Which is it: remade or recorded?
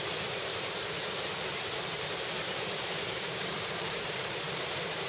remade